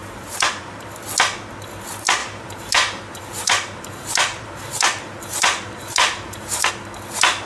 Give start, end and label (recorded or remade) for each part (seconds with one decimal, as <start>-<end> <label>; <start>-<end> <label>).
0.0-0.8 remade; 0.8-2.2 recorded; 2.2-6.7 remade; 6.7-7.5 recorded